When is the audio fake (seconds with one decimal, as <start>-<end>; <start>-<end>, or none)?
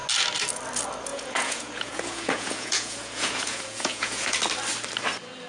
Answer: 1.1-4.4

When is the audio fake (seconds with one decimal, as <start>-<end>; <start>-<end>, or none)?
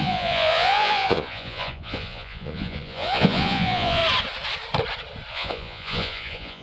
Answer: 0.0-4.0; 5.3-6.6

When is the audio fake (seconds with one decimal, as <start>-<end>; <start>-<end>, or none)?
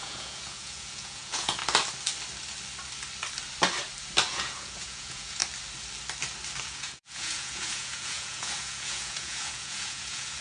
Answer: 0.0-1.6; 4.3-5.4; 6.6-10.4